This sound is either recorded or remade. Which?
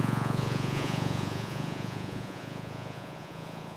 remade